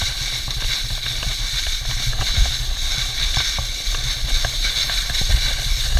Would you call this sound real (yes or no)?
yes